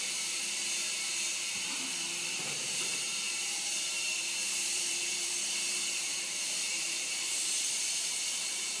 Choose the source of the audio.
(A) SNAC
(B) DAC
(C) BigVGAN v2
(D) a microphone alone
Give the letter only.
C